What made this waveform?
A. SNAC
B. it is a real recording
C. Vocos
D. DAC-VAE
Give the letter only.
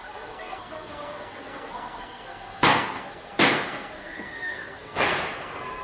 A